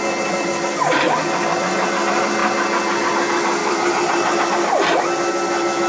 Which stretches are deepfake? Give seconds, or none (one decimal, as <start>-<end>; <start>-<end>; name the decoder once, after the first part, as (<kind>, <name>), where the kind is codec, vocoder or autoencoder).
3.6-4.5 (vocoder, BigVGAN v2)